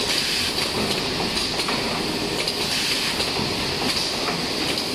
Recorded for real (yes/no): yes